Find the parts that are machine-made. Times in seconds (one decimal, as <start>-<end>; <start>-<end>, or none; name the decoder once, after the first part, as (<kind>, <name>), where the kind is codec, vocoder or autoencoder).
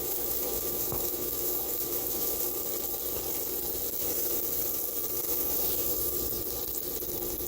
0.0-2.5 (autoencoder, DAC-VAE); 5.3-6.1